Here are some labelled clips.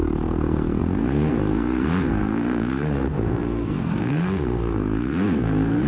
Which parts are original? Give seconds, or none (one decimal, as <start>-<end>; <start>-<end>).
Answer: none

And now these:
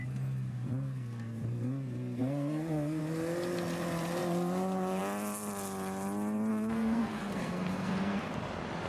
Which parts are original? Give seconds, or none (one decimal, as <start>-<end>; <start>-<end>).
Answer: 3.0-6.5; 8.3-8.9

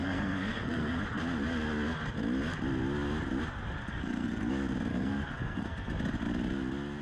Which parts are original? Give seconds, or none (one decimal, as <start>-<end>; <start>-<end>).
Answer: 1.0-3.8; 4.5-4.9; 5.9-7.0

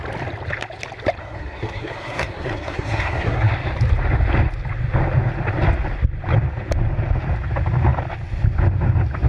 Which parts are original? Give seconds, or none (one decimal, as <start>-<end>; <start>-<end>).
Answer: 0.0-1.2; 3.5-9.3